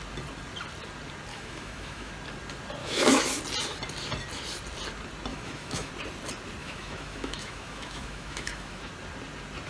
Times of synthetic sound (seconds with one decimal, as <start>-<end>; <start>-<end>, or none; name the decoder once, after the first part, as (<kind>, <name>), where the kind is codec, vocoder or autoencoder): 1.3-2.1 (autoencoder, DAC-VAE); 2.8-3.4; 5.3-5.9; 6.6-8.9